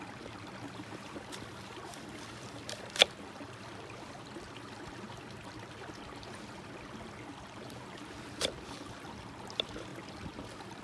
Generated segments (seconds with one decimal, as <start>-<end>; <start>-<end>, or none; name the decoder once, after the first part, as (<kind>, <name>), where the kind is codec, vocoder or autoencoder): none